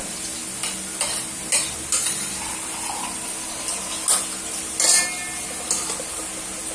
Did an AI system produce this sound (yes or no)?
no